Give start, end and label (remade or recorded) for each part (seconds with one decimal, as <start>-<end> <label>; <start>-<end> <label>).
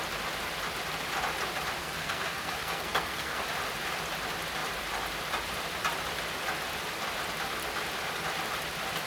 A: 0.0-1.8 recorded; 1.8-3.4 remade; 3.4-9.1 recorded